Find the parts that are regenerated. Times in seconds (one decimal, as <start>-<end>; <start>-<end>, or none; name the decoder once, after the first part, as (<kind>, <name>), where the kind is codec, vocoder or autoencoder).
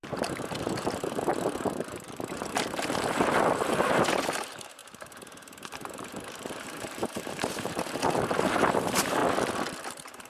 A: 0.0-1.3 (vocoder, BigVGAN v2); 2.3-9.2; 9.9-10.3